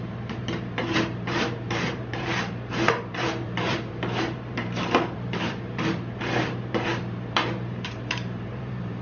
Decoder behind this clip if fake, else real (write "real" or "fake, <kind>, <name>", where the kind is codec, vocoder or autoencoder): fake, vocoder, BigVGAN v2